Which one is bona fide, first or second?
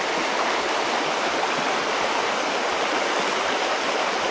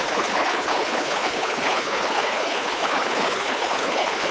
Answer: first